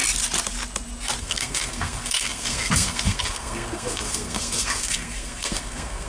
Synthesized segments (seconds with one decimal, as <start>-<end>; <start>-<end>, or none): 1.2-6.1